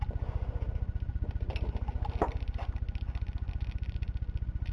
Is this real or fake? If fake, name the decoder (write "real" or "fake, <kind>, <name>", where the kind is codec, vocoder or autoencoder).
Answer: real